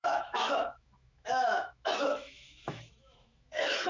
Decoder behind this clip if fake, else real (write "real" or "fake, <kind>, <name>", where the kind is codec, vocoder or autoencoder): fake, autoencoder, DAC-VAE